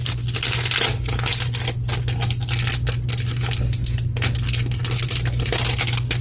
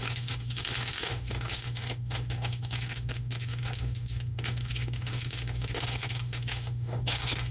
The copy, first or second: second